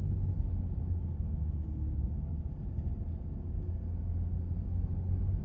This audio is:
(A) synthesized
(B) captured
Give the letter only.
B